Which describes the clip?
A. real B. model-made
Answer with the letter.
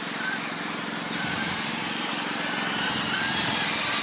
B